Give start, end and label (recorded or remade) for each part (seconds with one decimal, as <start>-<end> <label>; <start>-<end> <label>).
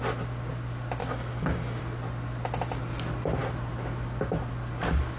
0.0-1.0 recorded; 1.0-1.8 remade; 1.8-5.2 recorded